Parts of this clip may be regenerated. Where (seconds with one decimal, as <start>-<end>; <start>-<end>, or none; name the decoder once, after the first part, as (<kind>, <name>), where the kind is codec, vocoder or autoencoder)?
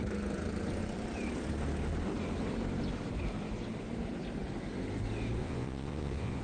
5.4-6.4 (vocoder, Vocos)